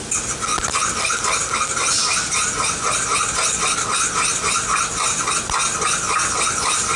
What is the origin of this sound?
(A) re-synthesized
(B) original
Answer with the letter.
B